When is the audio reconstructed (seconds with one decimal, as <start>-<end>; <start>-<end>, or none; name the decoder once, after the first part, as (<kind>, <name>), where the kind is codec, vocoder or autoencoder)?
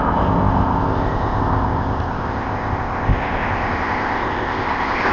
0.0-5.1 (codec, ZipCodec)